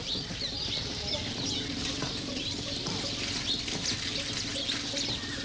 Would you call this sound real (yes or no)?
yes